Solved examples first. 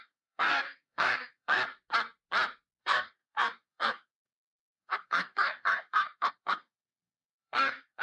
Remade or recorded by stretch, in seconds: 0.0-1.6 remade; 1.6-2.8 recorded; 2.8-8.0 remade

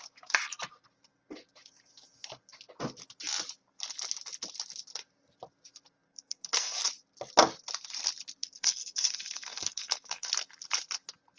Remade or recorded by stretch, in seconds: 0.0-6.1 recorded; 6.1-6.8 remade; 6.8-8.4 recorded; 8.4-10.3 remade; 10.3-11.4 recorded

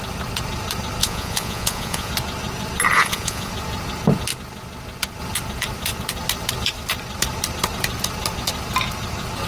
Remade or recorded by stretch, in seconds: 0.0-1.0 recorded; 1.0-2.1 remade; 2.1-2.9 recorded; 2.9-3.5 remade; 3.5-9.5 recorded

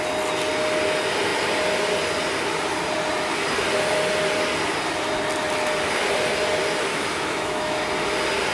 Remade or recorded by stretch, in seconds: 0.0-6.9 recorded; 6.9-7.8 remade; 7.8-8.5 recorded

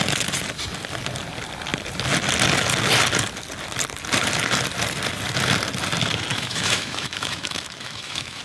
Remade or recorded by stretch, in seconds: 0.0-6.3 recorded; 6.3-8.4 remade

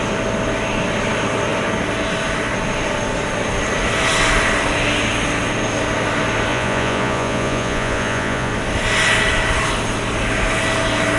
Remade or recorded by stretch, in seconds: 0.0-6.5 recorded; 6.5-8.5 remade; 8.5-11.2 recorded

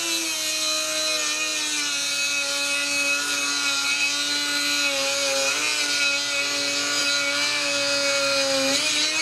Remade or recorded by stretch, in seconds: 0.0-9.2 recorded

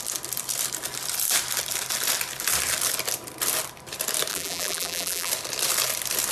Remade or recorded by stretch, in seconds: 0.0-4.3 recorded; 4.3-5.3 remade; 5.3-6.3 recorded